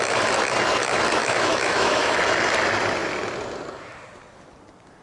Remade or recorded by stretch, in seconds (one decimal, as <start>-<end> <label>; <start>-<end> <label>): 0.0-1.2 recorded; 1.2-2.2 remade; 2.2-5.0 recorded